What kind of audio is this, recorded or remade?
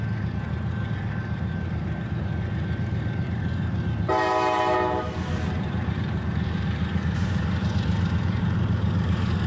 remade